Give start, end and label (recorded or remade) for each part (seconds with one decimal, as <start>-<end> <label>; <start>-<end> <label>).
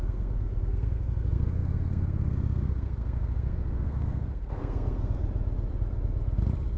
0.0-5.2 remade; 5.2-6.8 recorded